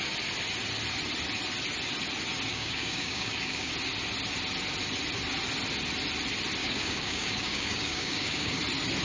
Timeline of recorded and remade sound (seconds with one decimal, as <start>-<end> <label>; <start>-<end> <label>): 0.0-2.5 recorded; 2.5-3.7 remade; 3.7-6.6 recorded; 6.6-8.6 remade; 8.6-9.0 recorded